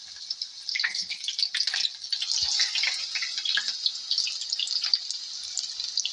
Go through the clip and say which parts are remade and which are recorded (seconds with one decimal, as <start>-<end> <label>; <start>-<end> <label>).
0.0-0.7 recorded; 0.7-1.2 remade; 1.2-6.1 recorded